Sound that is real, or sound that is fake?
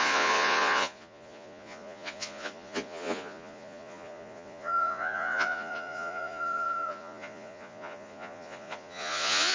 fake